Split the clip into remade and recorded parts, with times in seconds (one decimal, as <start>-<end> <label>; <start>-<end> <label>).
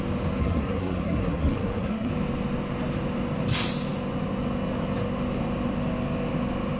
0.0-0.4 recorded; 0.4-2.1 remade; 2.1-6.8 recorded